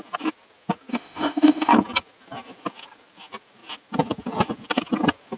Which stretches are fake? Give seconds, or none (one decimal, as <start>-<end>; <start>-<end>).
0.9-1.7